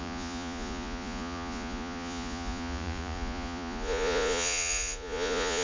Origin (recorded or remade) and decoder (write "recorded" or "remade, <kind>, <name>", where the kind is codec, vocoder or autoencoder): remade, vocoder, Vocos